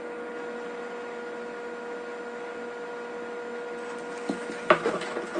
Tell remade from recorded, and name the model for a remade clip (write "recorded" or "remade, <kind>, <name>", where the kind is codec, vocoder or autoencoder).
recorded